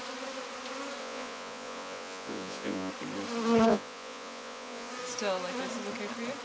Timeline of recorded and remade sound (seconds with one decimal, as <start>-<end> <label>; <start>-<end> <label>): 0.0-1.0 recorded; 1.0-2.9 remade; 2.9-3.7 recorded; 3.7-4.9 remade; 4.9-6.4 recorded